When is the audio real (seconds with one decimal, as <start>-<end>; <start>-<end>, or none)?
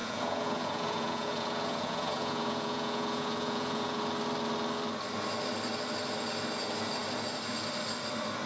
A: 4.0-8.5